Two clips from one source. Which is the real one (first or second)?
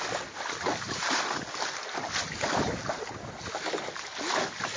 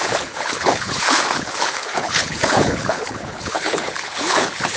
first